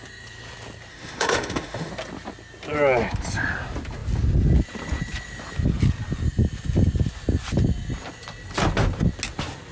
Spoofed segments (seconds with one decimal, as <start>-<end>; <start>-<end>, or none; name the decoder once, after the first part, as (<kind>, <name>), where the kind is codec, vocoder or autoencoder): 0.9-1.9 (autoencoder, DAC-VAE)